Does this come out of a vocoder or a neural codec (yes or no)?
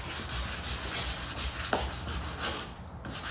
no